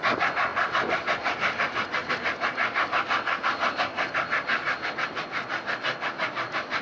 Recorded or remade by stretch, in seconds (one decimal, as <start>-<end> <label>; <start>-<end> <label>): 0.0-0.5 recorded; 0.5-2.1 remade; 2.1-6.8 recorded